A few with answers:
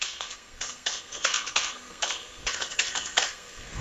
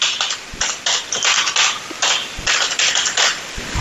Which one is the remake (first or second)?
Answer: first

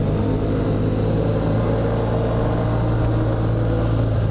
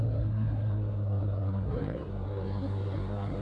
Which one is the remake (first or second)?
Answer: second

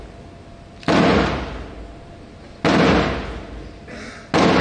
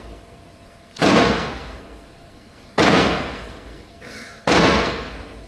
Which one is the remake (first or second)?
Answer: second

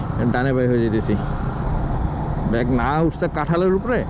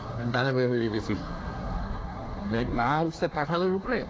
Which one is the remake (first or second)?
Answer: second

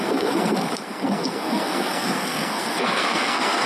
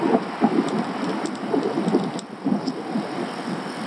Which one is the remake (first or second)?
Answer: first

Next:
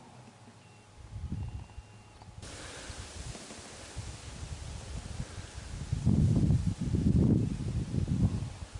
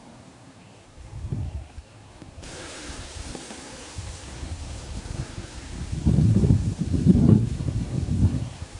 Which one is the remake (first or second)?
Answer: second